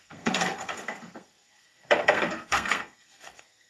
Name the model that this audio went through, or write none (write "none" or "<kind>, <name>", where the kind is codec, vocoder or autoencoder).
codec, SNAC